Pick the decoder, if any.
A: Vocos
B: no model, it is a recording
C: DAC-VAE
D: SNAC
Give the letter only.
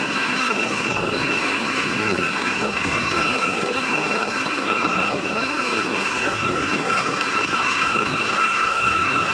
D